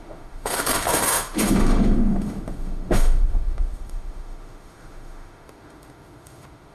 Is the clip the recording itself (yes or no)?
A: no